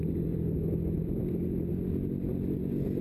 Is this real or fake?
real